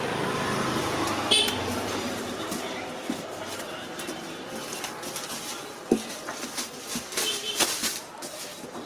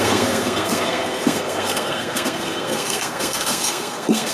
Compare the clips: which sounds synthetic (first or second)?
second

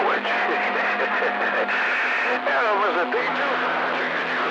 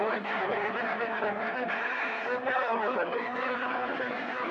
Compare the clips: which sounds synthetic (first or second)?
second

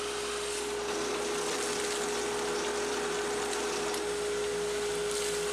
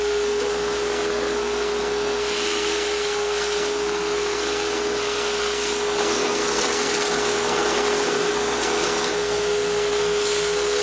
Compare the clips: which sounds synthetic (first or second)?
second